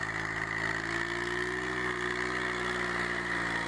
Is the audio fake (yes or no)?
no